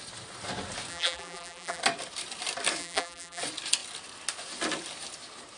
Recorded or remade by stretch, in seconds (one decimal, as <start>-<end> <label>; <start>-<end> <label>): 0.0-0.9 recorded; 0.9-1.8 remade; 1.8-2.8 recorded; 2.8-3.4 remade; 3.4-5.6 recorded